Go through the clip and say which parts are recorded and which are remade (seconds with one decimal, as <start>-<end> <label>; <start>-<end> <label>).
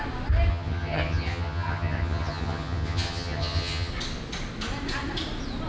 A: 0.0-0.5 recorded; 0.5-3.9 remade; 3.9-5.7 recorded